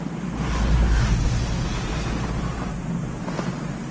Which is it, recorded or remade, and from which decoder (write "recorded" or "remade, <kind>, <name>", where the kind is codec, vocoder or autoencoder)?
recorded